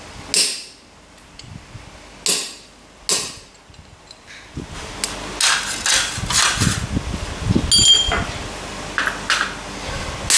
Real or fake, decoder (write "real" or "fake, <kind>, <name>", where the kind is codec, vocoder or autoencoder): real